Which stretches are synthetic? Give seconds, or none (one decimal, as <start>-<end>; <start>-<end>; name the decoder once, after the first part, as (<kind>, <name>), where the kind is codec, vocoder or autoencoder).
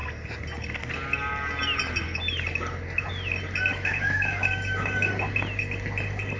3.7-5.1 (autoencoder, DAC-VAE)